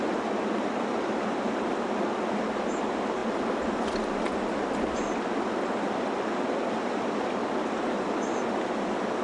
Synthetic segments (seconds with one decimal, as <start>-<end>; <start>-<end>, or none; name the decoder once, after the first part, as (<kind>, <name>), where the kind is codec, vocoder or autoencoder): 0.0-3.2 (vocoder, BigVGAN v2); 6.7-9.2